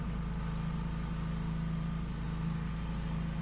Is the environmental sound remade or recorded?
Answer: recorded